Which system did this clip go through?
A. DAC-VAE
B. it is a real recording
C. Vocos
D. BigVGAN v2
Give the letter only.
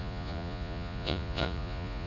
C